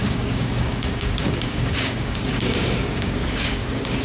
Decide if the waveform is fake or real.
fake